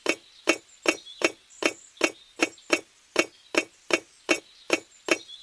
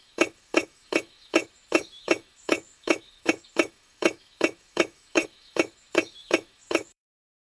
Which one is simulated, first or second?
second